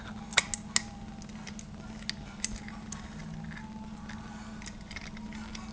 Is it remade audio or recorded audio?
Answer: recorded